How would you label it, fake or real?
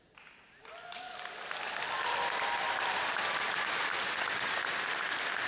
real